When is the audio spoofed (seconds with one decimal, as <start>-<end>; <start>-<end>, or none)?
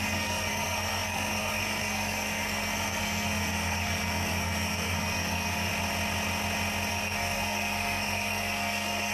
0.0-5.7; 6.9-9.1